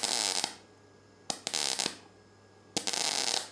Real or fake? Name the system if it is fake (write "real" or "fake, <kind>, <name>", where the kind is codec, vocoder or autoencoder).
real